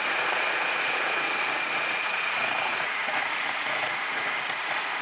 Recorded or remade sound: remade